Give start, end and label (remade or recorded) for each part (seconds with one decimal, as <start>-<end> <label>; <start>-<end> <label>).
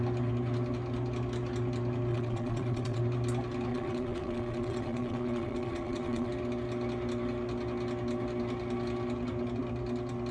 0.0-2.1 recorded; 2.1-3.0 remade; 3.0-3.7 recorded; 3.7-6.3 remade; 6.3-10.3 recorded